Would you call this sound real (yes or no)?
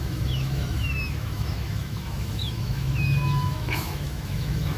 no